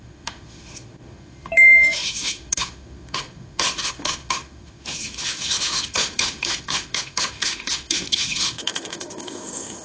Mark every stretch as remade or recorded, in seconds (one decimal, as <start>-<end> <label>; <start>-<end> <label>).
0.0-9.8 remade